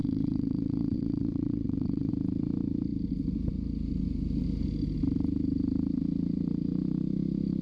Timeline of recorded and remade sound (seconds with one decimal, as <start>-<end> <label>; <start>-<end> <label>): 0.0-2.1 remade; 2.1-7.6 recorded